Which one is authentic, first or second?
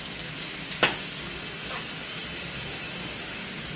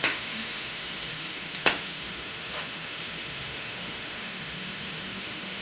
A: first